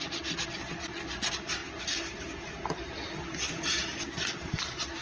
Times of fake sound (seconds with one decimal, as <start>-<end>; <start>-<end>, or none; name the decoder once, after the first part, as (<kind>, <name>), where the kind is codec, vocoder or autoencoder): none